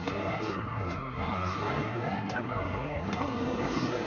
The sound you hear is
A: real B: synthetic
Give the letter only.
B